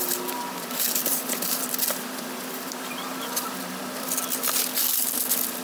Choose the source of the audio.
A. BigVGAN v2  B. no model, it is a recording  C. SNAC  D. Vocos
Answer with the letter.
A